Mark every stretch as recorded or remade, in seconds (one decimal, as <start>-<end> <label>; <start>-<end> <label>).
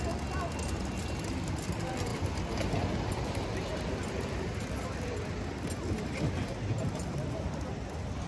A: 0.0-8.3 recorded